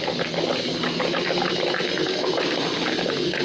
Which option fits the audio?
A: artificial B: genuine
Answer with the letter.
B